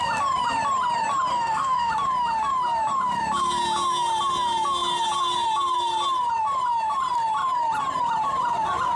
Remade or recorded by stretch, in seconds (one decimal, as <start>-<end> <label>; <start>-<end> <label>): 0.0-1.3 recorded; 1.3-1.9 remade; 1.9-9.0 recorded